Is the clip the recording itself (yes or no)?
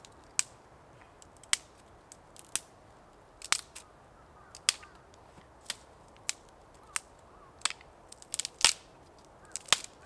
yes